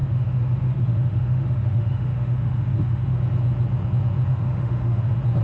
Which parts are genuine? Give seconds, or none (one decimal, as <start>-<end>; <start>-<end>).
3.2-4.3; 5.0-5.4